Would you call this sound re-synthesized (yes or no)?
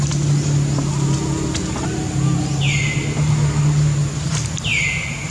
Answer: no